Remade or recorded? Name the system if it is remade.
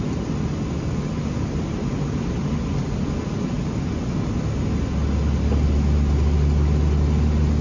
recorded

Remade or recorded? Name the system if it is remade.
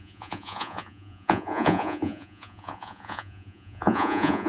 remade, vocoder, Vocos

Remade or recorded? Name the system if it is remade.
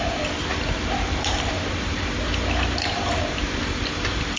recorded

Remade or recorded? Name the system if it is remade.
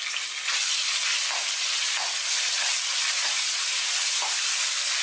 recorded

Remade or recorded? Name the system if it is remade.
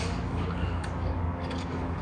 remade, codec, DAC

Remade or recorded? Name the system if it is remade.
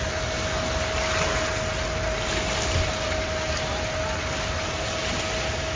recorded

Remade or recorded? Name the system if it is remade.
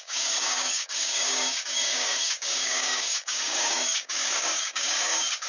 remade, codec, DAC